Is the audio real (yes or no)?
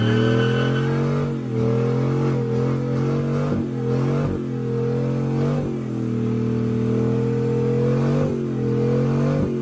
yes